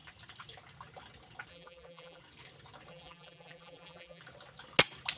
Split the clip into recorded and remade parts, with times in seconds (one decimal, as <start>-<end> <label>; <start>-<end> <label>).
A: 0.0-1.5 recorded; 1.5-2.2 remade; 2.2-2.9 recorded; 2.9-4.2 remade; 4.2-5.2 recorded

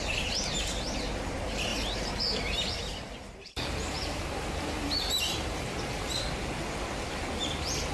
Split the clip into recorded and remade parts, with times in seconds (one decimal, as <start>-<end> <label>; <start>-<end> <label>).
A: 0.0-1.7 recorded; 1.7-6.2 remade; 6.2-7.9 recorded

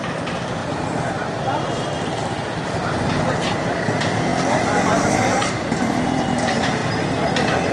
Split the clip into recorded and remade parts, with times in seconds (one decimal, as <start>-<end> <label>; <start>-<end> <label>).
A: 0.0-4.3 remade; 4.3-4.9 recorded; 4.9-6.8 remade; 6.8-7.7 recorded

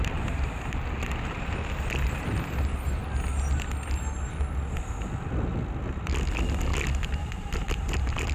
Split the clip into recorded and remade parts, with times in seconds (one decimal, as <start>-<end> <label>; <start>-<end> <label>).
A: 0.0-7.2 recorded; 7.2-8.3 remade

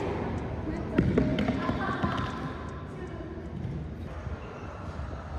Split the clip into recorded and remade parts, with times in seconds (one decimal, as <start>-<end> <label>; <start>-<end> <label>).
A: 0.0-1.3 recorded; 1.3-2.0 remade; 2.0-5.4 recorded

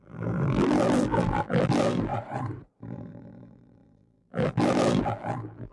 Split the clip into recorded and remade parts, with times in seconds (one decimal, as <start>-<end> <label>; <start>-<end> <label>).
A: 0.0-2.1 remade; 2.1-2.8 recorded; 2.8-5.7 remade